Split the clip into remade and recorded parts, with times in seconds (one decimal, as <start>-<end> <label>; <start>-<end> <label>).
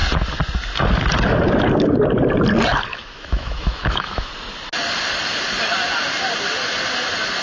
0.0-2.9 recorded; 2.9-4.3 remade; 4.3-7.4 recorded